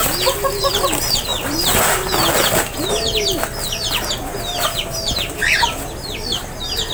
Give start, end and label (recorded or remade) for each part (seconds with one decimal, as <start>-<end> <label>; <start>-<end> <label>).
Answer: 0.0-6.9 recorded